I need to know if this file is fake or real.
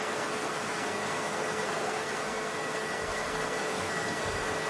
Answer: fake